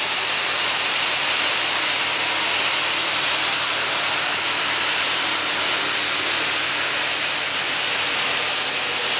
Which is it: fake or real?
real